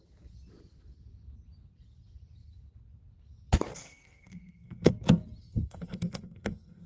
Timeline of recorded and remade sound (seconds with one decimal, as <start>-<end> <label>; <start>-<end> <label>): 0.0-3.7 recorded; 3.7-4.9 remade; 4.9-5.4 recorded; 5.4-6.9 remade